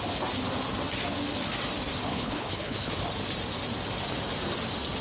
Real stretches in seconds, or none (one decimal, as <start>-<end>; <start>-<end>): 0.0-2.1; 2.9-5.0